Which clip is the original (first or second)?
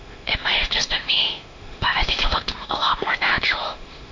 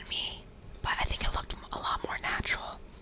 second